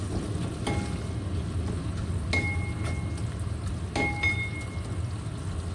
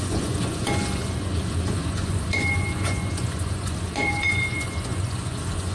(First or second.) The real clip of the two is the first